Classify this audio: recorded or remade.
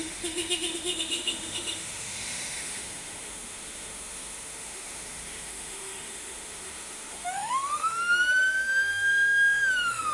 remade